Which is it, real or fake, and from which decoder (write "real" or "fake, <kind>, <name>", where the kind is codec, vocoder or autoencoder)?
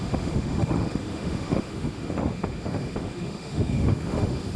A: fake, autoencoder, DAC-VAE